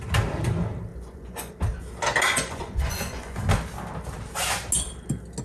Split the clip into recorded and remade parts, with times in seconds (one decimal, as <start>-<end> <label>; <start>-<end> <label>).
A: 0.0-0.9 recorded; 0.9-1.5 remade; 1.5-2.3 recorded; 2.3-3.4 remade; 3.4-5.4 recorded